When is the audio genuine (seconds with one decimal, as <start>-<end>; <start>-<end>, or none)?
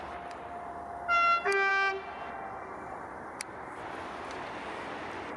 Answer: 0.0-5.4